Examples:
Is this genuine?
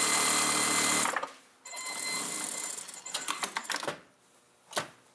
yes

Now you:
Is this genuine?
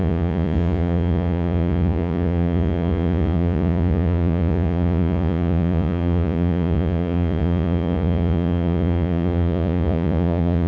no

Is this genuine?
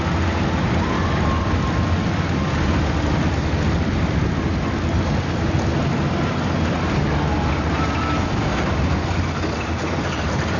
yes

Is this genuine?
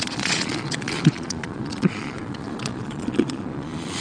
no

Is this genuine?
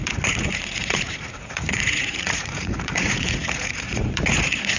no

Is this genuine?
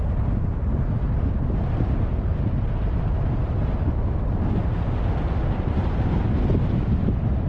yes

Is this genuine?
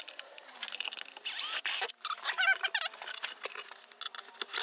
yes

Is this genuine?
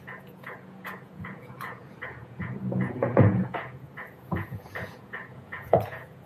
no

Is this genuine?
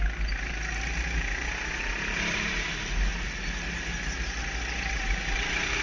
yes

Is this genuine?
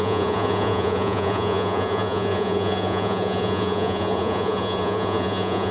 no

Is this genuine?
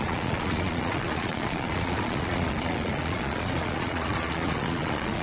no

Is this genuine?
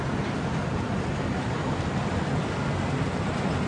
yes